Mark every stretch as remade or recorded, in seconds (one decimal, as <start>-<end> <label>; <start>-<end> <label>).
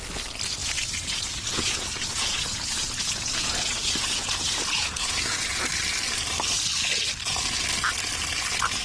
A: 0.0-0.6 recorded; 0.6-5.6 remade; 5.6-8.8 recorded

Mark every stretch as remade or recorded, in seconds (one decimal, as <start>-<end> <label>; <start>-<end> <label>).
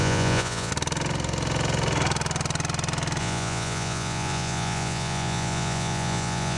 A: 0.0-0.7 remade; 0.7-3.2 recorded; 3.2-6.6 remade